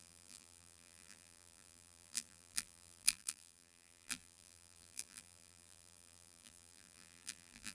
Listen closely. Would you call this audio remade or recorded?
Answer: remade